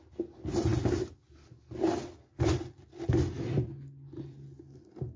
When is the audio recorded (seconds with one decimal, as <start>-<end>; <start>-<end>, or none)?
0.0-5.2